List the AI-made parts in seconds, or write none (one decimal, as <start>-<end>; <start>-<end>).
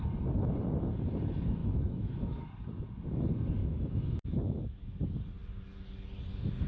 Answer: 1.6-2.4; 3.6-4.6